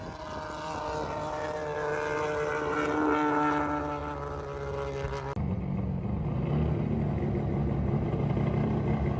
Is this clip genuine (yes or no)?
yes